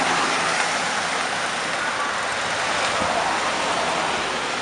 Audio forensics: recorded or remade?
recorded